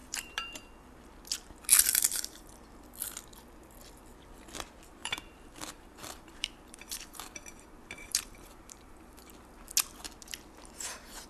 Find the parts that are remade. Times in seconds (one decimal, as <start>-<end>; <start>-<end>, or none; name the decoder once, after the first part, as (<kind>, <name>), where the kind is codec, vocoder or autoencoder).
0.0-0.7 (vocoder, BigVGAN v2); 1.9-2.5; 5.0-9.2